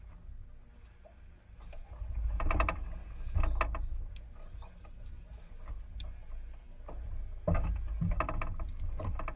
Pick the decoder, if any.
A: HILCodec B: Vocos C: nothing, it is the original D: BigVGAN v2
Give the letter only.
C